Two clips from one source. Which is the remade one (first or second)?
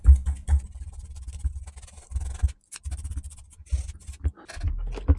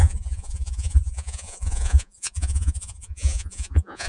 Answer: second